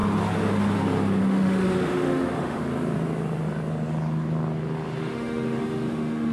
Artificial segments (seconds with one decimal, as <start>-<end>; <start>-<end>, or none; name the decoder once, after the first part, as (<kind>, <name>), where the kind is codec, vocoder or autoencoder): 1.2-2.6 (autoencoder, DAC-VAE); 5.0-6.3